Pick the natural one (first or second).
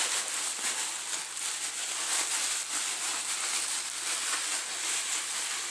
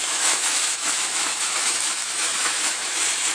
first